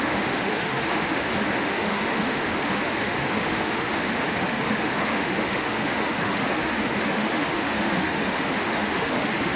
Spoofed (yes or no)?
yes